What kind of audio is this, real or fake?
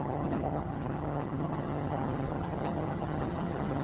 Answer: fake